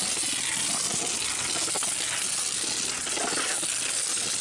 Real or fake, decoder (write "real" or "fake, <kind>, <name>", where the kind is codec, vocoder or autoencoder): real